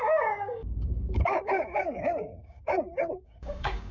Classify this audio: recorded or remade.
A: remade